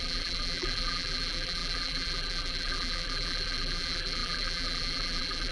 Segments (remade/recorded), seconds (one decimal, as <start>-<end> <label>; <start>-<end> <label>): 0.0-5.5 remade